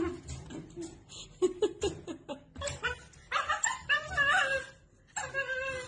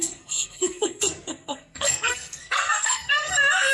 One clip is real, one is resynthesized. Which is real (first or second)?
first